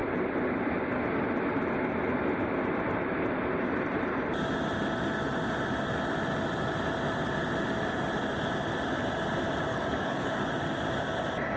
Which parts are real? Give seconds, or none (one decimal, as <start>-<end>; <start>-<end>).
0.0-9.7; 10.4-11.6